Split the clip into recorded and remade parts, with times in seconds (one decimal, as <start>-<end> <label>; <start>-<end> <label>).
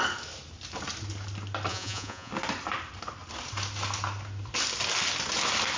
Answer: 0.0-1.7 recorded; 1.7-2.3 remade; 2.3-5.8 recorded